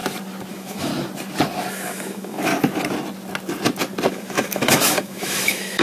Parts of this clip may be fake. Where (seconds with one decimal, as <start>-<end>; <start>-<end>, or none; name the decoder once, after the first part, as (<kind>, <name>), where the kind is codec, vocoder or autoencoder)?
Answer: 0.5-0.9 (autoencoder, DAC-VAE); 1.7-2.5; 4.1-5.8